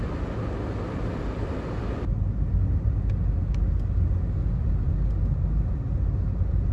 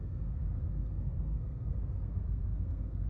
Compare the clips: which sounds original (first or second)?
first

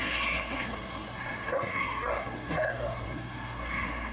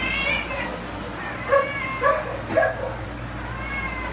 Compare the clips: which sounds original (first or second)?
second